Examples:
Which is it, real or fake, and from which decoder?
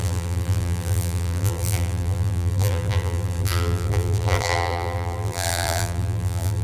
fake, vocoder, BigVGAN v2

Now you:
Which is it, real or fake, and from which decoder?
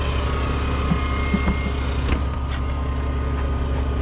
real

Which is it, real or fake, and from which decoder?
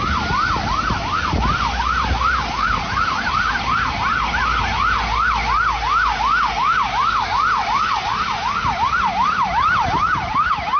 real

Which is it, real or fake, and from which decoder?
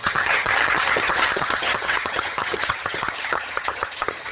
fake, vocoder, HiFi-GAN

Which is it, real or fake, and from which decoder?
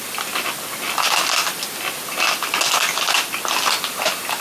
real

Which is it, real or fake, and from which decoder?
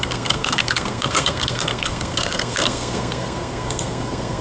fake, codec, SNAC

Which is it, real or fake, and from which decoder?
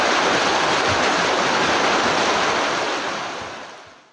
real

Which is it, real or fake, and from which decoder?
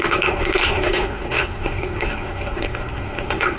fake, codec, SNAC